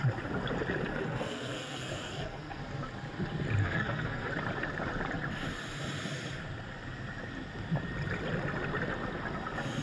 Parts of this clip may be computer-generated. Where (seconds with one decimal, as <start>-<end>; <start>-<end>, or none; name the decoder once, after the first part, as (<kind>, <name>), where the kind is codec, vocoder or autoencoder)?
0.9-2.6 (codec, SNAC); 3.6-4.3